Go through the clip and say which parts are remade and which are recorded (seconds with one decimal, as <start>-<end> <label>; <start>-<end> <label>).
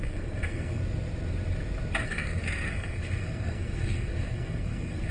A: 0.0-0.8 remade; 0.8-2.0 recorded; 2.0-5.1 remade